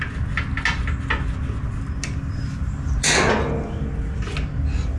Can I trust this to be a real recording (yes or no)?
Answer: yes